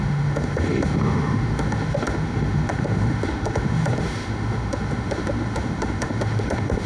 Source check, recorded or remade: remade